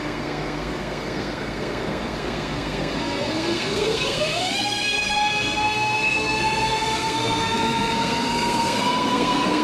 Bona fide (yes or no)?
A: no